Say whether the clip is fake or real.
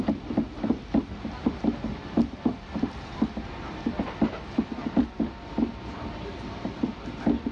real